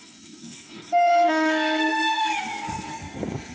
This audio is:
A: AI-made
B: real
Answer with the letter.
A